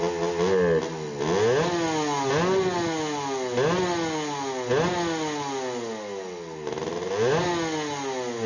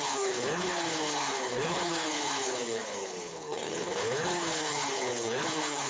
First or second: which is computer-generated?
second